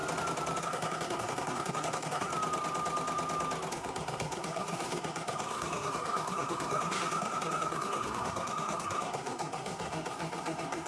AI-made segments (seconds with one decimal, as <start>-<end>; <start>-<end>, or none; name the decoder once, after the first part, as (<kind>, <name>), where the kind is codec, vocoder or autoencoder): 0.6-2.3 (codec, SNAC); 3.7-10.9